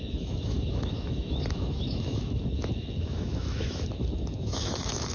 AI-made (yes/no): yes